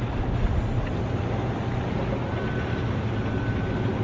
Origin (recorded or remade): recorded